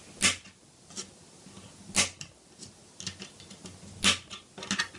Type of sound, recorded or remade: recorded